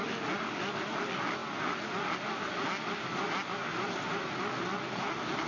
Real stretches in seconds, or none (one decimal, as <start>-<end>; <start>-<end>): 0.0-5.5